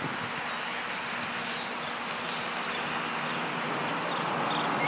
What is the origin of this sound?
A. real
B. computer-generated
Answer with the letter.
A